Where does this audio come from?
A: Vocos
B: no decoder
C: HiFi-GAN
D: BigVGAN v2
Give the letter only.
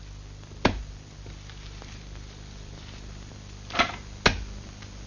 B